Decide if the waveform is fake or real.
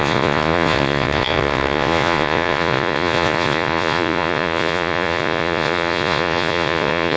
fake